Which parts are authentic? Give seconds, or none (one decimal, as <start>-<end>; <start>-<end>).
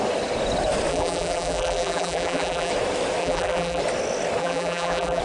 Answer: 0.0-0.9; 2.7-3.2; 3.8-4.4